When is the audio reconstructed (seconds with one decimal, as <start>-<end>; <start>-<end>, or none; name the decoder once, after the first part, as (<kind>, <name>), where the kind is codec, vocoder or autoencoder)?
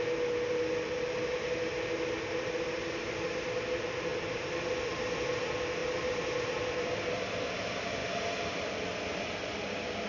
4.1-4.9 (vocoder, BigVGAN v2); 5.8-7.5; 8.0-8.7